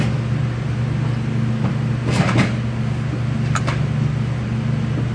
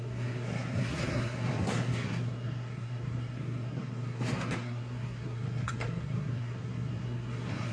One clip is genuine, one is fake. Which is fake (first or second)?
second